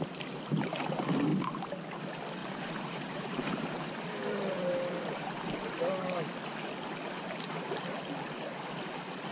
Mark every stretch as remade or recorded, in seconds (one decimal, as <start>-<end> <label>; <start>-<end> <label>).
0.0-2.4 recorded; 2.4-5.8 remade; 5.8-9.3 recorded